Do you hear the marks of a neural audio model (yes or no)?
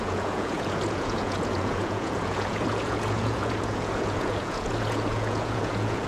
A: yes